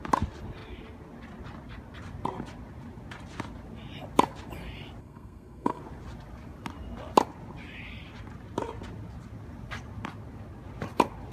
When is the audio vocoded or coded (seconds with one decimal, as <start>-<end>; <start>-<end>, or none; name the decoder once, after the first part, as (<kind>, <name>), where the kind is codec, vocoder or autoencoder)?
5.0-5.8 (codec, SNAC)